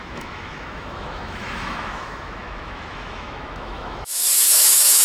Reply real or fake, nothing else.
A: fake